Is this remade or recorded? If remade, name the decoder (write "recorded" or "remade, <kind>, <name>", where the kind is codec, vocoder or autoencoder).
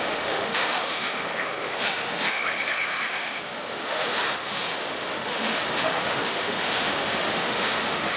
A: remade, autoencoder, DAC-VAE